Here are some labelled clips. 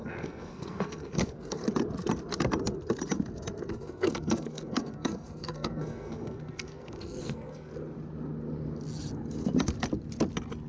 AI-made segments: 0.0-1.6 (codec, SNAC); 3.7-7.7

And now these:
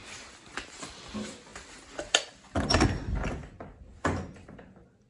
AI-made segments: none

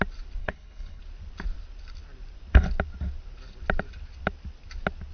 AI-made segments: 0.4-1.0 (codec, HILCodec)

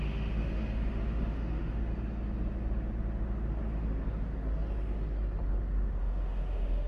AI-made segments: 0.0-1.9 (autoencoder, DAC-VAE); 6.0-6.9

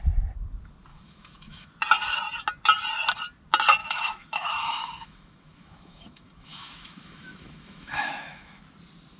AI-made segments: 0.9-1.7 (autoencoder, DAC-VAE); 3.8-8.6

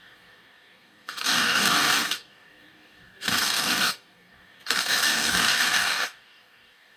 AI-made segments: 0.0-7.0 (codec, DAC)

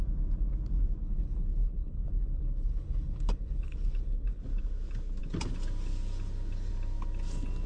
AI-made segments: 1.0-4.4 (codec, HILCodec)